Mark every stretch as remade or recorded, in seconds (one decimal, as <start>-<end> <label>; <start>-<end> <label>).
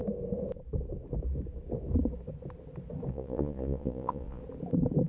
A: 0.0-3.1 recorded; 3.1-4.4 remade; 4.4-5.1 recorded